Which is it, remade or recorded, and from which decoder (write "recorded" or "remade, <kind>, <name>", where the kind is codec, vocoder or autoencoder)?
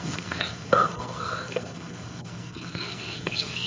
remade, codec, SNAC